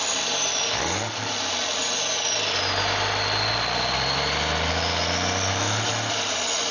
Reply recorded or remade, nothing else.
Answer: recorded